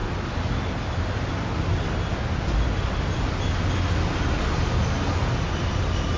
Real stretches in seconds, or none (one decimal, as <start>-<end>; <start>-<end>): 0.0-6.2